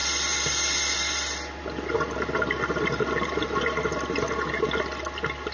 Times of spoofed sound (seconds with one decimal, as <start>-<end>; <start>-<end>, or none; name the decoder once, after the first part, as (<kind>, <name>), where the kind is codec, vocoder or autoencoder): none